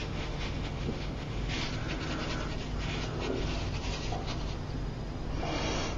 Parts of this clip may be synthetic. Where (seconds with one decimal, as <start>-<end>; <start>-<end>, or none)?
0.0-1.6